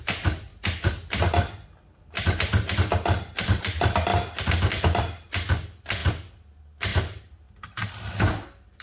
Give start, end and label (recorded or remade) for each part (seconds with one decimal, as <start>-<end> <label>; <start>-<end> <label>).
0.0-8.8 recorded